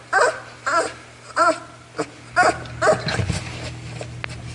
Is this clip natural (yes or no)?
yes